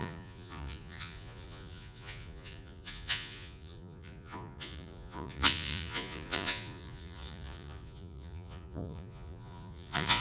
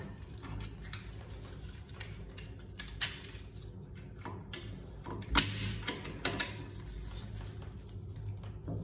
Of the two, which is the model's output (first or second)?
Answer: first